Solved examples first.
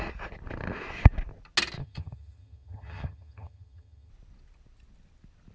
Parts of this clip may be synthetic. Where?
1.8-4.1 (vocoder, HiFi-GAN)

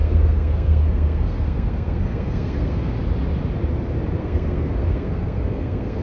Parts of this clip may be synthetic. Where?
0.0-2.9 (codec, SNAC); 4.2-6.0